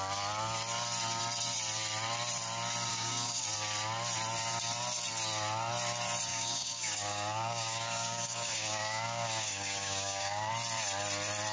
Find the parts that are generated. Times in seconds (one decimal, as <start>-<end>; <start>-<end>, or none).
2.9-3.4; 6.3-10.5